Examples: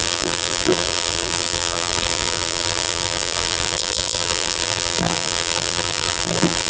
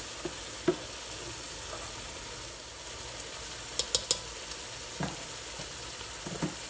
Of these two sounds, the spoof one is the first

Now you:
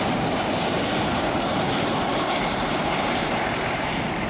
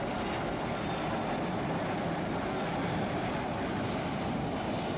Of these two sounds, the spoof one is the first